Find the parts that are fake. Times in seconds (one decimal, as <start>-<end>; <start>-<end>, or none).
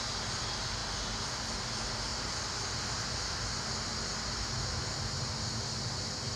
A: none